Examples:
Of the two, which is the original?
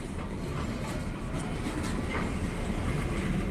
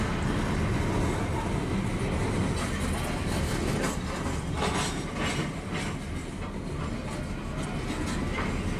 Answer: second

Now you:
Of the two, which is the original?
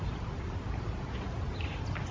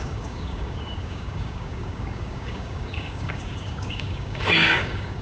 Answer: first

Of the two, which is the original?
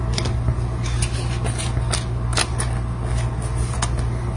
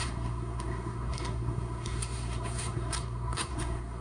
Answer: first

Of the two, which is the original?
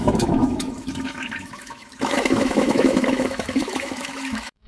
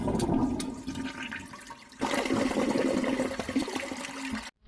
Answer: second